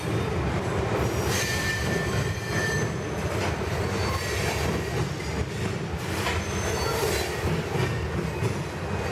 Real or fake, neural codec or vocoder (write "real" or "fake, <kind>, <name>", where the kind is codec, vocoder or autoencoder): real